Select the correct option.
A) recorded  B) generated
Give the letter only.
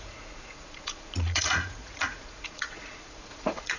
B